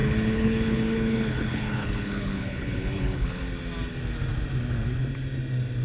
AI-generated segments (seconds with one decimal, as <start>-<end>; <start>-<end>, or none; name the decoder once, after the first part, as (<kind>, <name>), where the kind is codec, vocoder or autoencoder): 0.0-3.4 (codec, HILCodec)